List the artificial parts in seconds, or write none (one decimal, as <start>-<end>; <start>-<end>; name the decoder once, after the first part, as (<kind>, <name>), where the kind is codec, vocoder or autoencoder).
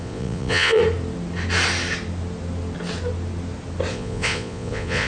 0.0-0.8 (vocoder, Vocos); 3.9-5.1